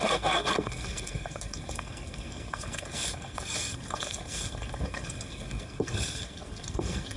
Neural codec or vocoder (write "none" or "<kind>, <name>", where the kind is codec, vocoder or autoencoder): codec, SNAC